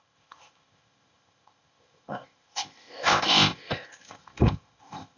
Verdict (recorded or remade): remade